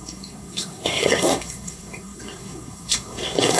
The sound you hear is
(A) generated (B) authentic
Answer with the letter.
A